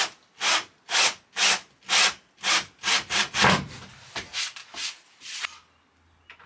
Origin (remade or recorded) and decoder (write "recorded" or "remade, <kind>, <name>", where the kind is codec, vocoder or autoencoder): recorded